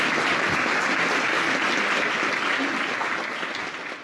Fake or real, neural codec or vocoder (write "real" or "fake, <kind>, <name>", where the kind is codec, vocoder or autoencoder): real